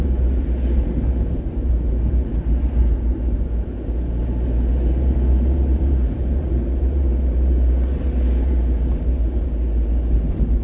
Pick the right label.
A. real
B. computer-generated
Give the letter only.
B